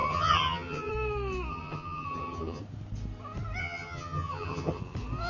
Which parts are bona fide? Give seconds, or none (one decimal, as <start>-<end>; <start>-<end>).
0.9-1.5; 2.6-3.6; 4.8-5.3